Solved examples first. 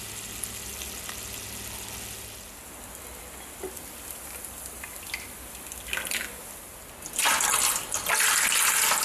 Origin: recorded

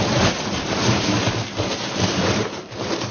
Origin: remade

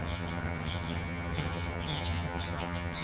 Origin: remade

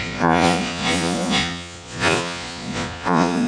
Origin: remade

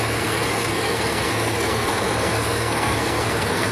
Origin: remade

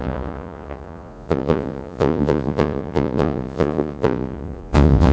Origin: remade